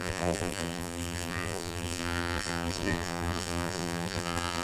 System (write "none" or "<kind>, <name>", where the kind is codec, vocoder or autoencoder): vocoder, BigVGAN v2